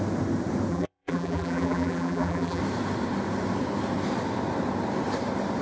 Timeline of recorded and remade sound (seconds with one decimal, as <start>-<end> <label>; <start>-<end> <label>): 0.0-0.7 recorded; 0.7-2.6 remade; 2.6-5.6 recorded